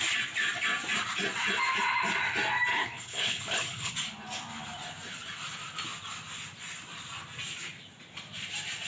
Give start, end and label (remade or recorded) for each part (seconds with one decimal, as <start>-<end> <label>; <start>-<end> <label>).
0.0-2.7 recorded; 2.7-3.9 remade; 3.9-8.9 recorded